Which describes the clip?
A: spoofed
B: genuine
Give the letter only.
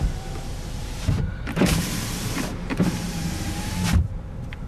A